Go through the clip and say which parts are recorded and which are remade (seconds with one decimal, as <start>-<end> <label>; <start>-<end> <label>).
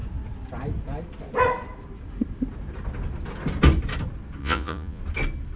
0.0-4.4 recorded; 4.4-5.0 remade; 5.0-5.6 recorded